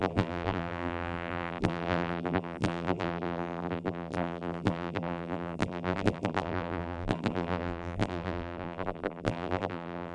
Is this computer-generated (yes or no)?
yes